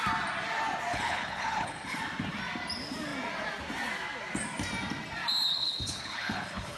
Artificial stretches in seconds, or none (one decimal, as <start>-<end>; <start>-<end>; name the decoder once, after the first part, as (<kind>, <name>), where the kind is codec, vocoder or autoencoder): 0.9-2.0 (codec, HILCodec); 5.5-6.8